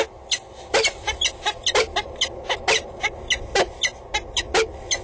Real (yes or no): yes